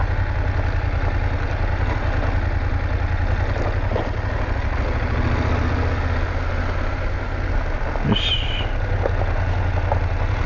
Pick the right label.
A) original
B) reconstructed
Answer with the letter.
A